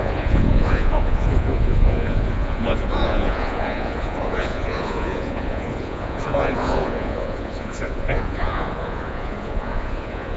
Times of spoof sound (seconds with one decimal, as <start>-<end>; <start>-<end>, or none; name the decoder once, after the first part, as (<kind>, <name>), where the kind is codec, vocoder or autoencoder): 0.0-10.4 (vocoder, Vocos)